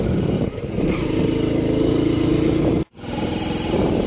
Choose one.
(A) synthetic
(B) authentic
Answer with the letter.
B